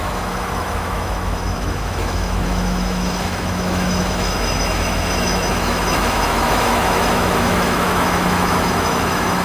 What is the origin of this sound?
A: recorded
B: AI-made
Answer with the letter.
B